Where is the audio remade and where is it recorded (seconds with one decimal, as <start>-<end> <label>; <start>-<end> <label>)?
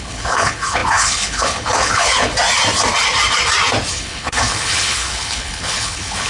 0.0-2.3 remade; 2.3-3.9 recorded; 3.9-6.3 remade